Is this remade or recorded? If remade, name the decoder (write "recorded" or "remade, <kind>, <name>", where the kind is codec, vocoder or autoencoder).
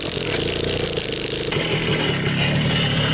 recorded